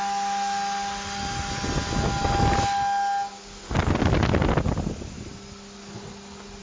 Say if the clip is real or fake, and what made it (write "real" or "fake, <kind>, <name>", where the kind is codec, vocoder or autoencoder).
real